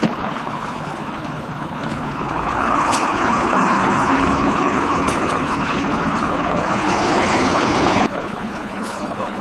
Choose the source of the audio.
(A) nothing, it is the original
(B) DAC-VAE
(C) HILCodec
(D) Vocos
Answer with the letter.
C